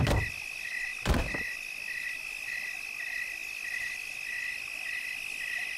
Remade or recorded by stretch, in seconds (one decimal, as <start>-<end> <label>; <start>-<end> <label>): 0.0-0.9 recorded; 0.9-2.5 remade; 2.5-5.8 recorded